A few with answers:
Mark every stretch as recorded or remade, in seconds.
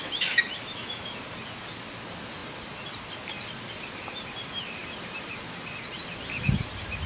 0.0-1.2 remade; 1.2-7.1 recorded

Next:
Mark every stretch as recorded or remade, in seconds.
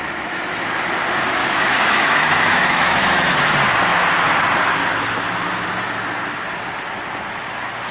0.0-0.7 remade; 0.7-1.4 recorded; 1.4-3.3 remade; 3.3-7.9 recorded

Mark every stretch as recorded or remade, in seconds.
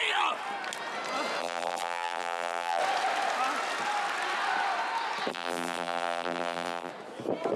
0.0-1.4 recorded; 1.4-2.8 remade; 2.8-5.3 recorded; 5.3-6.9 remade; 6.9-7.6 recorded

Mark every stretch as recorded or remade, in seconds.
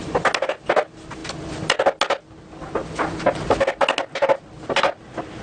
0.0-5.4 recorded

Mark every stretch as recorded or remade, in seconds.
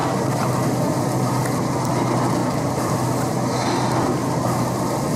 0.0-2.4 remade; 2.4-2.9 recorded; 2.9-4.2 remade; 4.2-4.8 recorded; 4.8-5.2 remade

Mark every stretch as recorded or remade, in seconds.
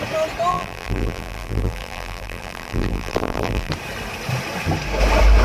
0.0-0.5 recorded; 0.5-3.7 remade; 3.7-5.4 recorded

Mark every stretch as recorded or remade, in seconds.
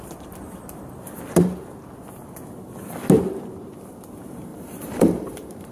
0.0-4.5 recorded; 4.5-5.7 remade